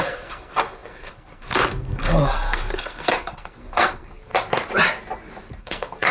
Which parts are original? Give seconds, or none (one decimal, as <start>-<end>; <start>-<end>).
4.3-5.6

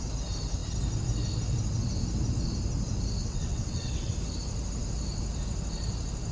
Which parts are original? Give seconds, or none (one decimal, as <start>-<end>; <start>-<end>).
0.0-3.2; 4.2-6.3

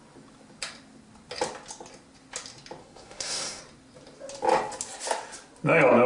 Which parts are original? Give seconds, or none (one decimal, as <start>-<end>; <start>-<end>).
0.0-2.8; 3.6-6.1

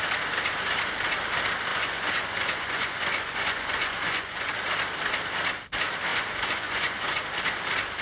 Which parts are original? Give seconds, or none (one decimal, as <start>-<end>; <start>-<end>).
0.0-1.7; 4.5-6.1; 7.2-8.0

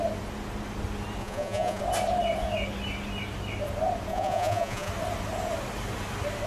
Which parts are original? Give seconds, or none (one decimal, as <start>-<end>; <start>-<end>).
0.0-1.2; 1.8-4.1; 4.9-6.5

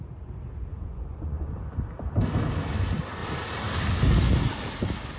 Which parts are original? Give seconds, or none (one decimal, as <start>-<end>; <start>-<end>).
0.0-0.7; 1.6-5.2